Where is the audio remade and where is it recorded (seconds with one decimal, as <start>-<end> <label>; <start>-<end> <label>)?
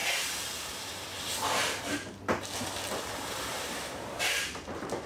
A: 0.0-3.5 recorded; 3.5-5.1 remade